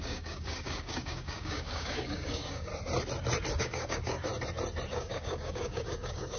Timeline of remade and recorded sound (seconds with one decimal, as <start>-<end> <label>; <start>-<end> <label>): 0.0-2.7 remade; 2.7-3.6 recorded; 3.6-4.3 remade; 4.3-4.9 recorded; 4.9-6.4 remade